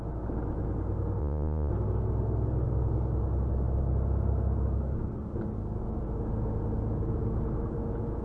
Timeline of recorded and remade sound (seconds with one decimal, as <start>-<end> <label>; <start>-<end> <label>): 0.0-1.2 recorded; 1.2-1.7 remade; 1.7-8.2 recorded